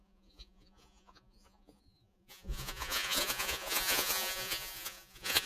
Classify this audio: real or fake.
fake